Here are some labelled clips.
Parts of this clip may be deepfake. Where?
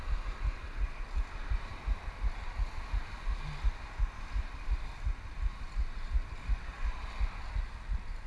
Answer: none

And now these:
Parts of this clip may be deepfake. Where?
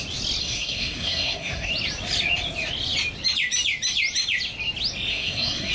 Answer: 0.4-1.7 (codec, SNAC); 5.1-5.7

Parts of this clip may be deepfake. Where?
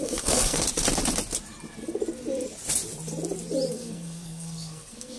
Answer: 0.0-0.6 (codec, SNAC); 3.7-5.2